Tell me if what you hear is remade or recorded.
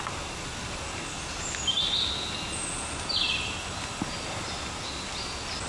recorded